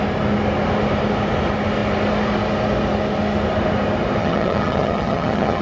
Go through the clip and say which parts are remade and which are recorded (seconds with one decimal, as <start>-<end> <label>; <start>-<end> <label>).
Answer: 0.0-4.2 recorded; 4.2-5.6 remade